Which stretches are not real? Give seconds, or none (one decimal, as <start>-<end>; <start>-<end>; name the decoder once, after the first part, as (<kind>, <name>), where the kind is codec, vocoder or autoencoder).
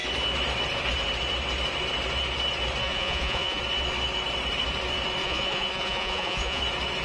2.8-3.6 (vocoder, Vocos); 5.2-6.6